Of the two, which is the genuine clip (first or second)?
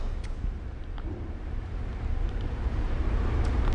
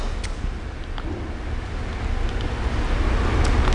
second